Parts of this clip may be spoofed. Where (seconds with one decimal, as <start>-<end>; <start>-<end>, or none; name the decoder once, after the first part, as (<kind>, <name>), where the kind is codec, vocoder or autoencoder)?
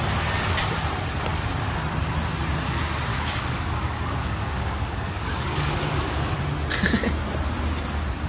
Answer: 3.1-6.4 (codec, DAC)